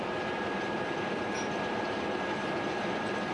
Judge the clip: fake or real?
real